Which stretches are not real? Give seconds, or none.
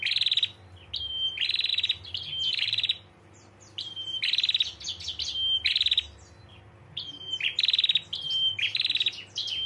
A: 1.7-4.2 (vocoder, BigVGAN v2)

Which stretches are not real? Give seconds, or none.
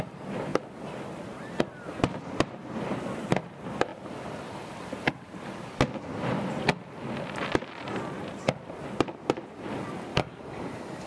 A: 10.1-11.1 (codec, DAC)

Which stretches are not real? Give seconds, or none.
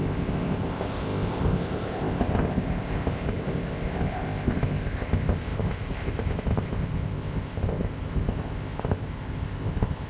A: 0.0-10.1 (codec, ZipCodec)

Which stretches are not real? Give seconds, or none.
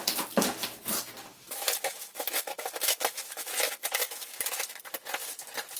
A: 1.3-4.8 (autoencoder, DAC-VAE)